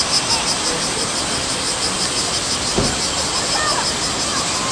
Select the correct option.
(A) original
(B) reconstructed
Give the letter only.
A